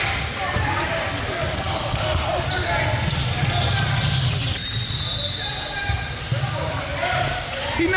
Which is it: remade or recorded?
recorded